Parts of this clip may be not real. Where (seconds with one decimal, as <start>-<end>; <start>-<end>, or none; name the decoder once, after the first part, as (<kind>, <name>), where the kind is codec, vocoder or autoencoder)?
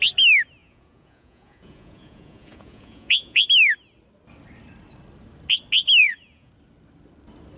0.6-3.5 (vocoder, Vocos); 6.0-6.5